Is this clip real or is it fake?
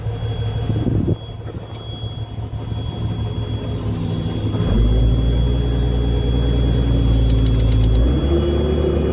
real